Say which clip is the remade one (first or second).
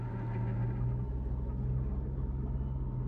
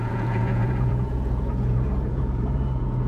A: second